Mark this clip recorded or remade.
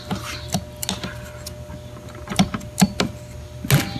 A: recorded